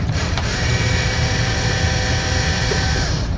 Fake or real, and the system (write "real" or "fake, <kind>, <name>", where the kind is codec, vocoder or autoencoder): fake, vocoder, BigVGAN v2